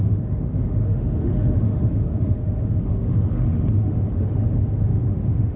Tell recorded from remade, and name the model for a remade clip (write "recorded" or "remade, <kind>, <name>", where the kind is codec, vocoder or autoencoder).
remade, autoencoder, DAC-VAE